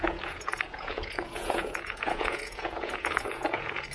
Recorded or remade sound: remade